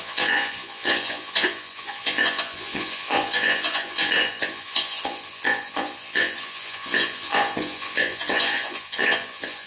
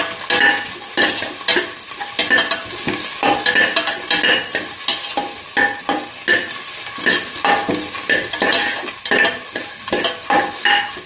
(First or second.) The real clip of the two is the second